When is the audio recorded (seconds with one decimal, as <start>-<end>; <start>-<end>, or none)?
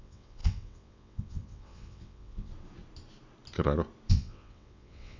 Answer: 2.5-4.1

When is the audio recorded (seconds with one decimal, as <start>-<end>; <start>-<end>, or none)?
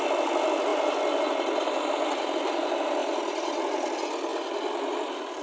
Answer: 0.0-5.4